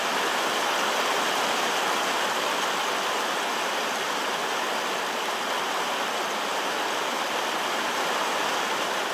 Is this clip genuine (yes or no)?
yes